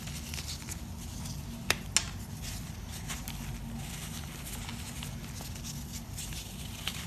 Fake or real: real